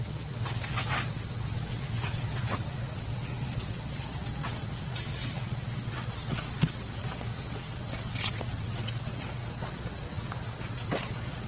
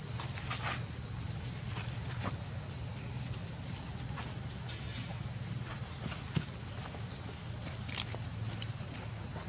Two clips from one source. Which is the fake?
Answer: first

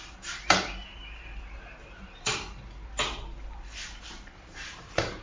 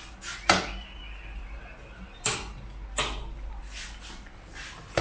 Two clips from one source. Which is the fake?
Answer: first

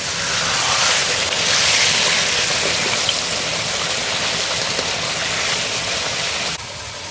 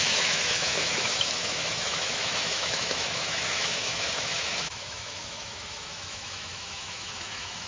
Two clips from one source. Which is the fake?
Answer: second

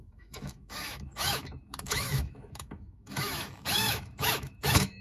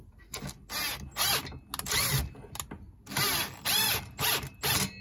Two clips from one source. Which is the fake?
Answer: first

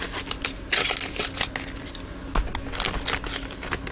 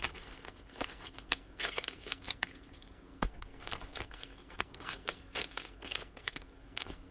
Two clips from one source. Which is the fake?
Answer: second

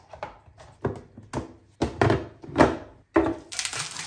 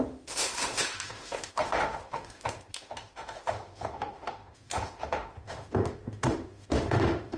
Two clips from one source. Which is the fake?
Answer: second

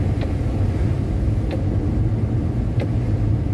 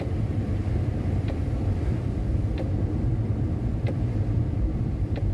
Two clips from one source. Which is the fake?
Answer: second